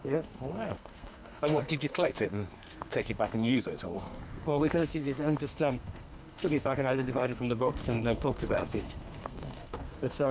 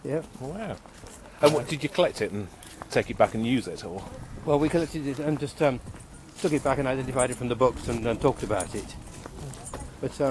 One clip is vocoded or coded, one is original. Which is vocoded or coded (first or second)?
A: first